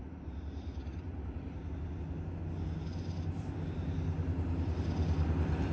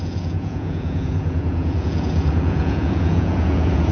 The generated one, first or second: second